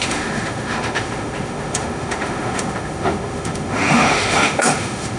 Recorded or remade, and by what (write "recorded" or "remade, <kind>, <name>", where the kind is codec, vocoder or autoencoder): remade, autoencoder, DAC-VAE